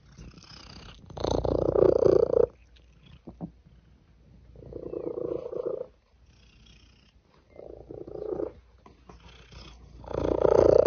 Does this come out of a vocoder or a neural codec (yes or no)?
no